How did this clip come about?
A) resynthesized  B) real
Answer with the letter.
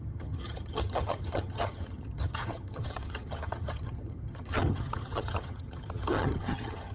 A